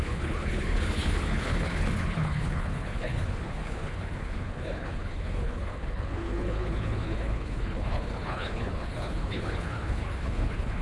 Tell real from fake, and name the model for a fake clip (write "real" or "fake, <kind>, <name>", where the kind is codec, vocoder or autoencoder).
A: fake, codec, HILCodec